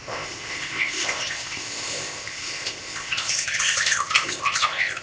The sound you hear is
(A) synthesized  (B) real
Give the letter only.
A